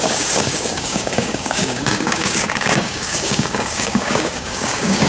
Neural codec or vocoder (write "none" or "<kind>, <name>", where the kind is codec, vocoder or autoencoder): codec, DAC